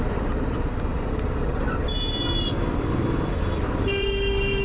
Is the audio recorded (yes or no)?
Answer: yes